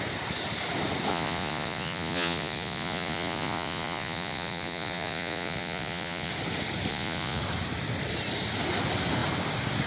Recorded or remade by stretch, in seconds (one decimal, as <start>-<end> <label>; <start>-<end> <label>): 0.0-1.1 recorded; 1.1-6.3 remade; 6.3-6.9 recorded; 6.9-7.4 remade; 7.4-9.9 recorded